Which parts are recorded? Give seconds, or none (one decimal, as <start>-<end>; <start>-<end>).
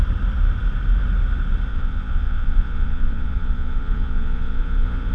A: 0.0-1.7